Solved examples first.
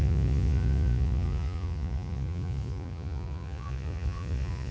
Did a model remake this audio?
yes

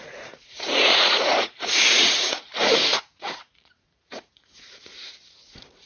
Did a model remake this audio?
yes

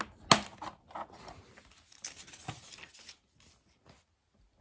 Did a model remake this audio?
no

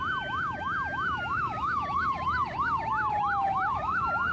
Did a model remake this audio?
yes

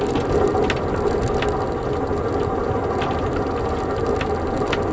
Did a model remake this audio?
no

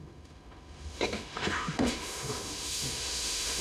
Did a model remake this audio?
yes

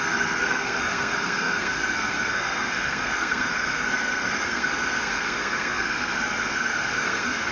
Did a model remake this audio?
yes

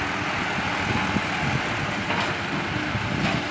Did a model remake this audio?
no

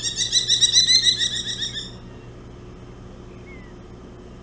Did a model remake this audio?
no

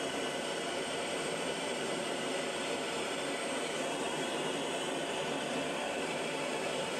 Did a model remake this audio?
yes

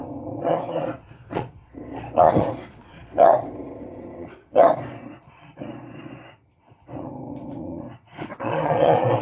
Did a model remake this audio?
yes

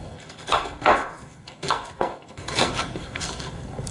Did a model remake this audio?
yes